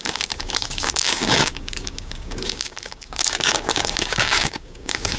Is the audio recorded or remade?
remade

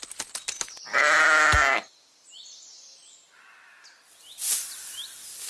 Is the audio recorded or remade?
recorded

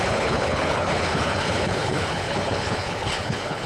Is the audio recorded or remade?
remade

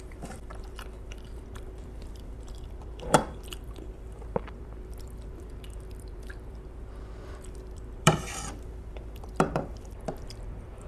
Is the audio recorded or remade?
remade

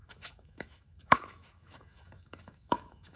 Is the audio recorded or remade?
remade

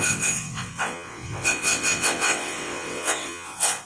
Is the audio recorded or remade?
remade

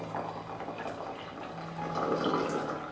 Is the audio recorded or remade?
recorded